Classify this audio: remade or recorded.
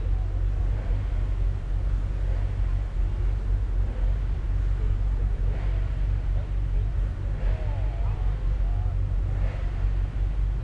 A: recorded